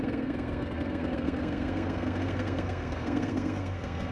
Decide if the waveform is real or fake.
fake